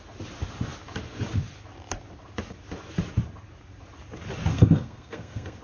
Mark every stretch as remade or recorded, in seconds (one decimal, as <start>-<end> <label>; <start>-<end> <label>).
0.0-4.5 recorded; 4.5-5.6 remade